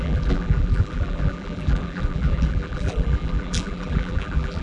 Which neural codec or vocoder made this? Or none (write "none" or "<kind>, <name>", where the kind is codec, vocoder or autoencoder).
vocoder, BigVGAN v2